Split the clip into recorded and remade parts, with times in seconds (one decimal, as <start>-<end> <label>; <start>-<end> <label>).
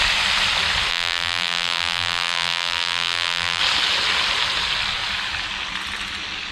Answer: 0.0-0.9 recorded; 0.9-3.6 remade; 3.6-6.5 recorded